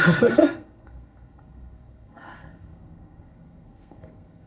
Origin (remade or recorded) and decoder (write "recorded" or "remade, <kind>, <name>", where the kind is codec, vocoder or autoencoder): remade, codec, SNAC